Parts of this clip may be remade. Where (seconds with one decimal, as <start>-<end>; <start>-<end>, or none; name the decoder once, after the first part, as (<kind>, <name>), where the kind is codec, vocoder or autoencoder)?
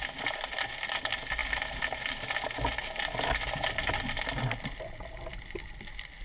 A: none